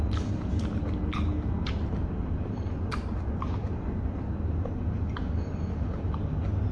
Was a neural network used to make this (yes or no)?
no